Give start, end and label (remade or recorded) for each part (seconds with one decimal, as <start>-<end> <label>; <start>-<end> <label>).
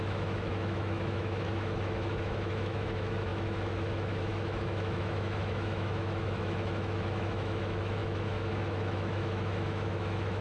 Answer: 0.0-10.4 remade